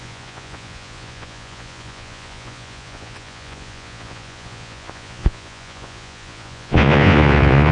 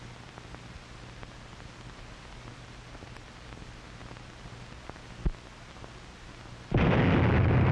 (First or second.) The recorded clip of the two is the second